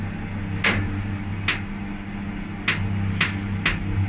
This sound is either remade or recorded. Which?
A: recorded